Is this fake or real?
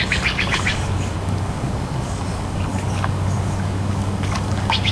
fake